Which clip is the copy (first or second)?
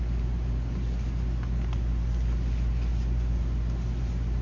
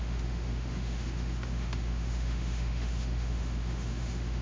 second